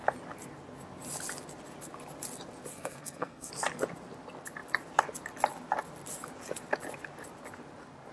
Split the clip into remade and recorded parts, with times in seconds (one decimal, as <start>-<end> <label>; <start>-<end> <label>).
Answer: 0.0-2.7 recorded; 2.7-3.5 remade; 3.5-8.1 recorded